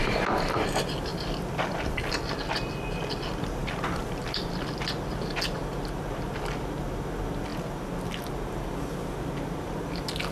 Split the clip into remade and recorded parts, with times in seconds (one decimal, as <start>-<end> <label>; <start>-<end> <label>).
0.0-10.3 recorded